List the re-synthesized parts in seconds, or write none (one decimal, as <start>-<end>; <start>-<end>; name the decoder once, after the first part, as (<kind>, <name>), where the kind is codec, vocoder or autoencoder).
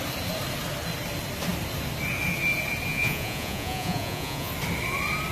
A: 2.9-4.5 (vocoder, Vocos)